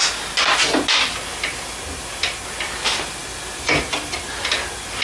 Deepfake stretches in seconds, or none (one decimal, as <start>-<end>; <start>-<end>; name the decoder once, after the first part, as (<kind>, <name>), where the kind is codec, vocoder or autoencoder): 3.2-4.5 (vocoder, BigVGAN v2)